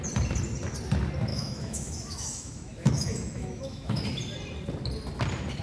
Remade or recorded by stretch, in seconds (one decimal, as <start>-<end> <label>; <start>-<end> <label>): 0.0-1.3 recorded; 1.3-4.0 remade; 4.0-5.6 recorded